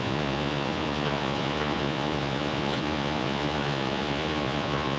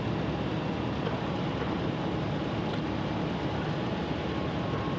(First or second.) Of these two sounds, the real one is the second